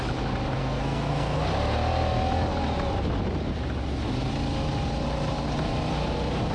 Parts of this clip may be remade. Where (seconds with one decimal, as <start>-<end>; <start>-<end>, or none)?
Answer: 0.6-1.4